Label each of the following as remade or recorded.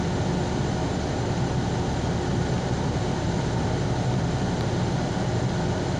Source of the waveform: recorded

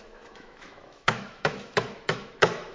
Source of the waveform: remade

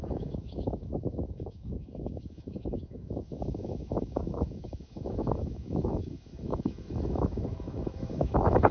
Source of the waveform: remade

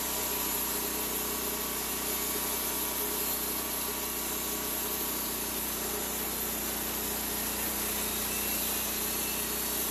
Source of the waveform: recorded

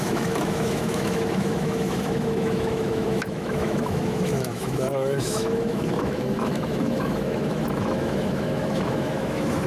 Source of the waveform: remade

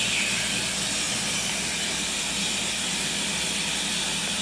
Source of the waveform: recorded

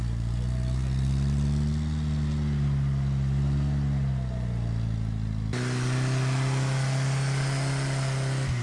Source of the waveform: recorded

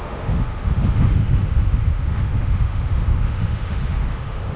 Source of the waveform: remade